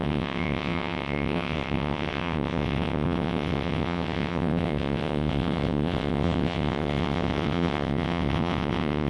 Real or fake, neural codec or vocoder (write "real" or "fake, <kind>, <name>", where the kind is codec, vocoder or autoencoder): fake, vocoder, WaveNeXt